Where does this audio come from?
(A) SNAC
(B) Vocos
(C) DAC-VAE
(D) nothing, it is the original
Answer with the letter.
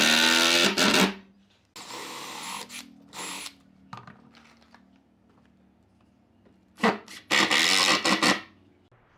D